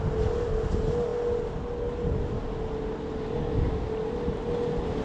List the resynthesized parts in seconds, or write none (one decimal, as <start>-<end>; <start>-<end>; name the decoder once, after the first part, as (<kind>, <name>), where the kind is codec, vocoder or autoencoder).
none